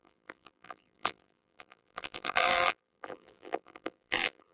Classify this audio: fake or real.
fake